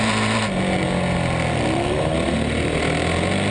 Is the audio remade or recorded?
recorded